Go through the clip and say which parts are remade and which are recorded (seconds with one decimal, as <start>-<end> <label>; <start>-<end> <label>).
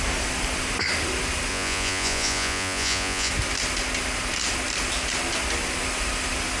0.0-1.5 recorded; 1.5-3.3 remade; 3.3-6.6 recorded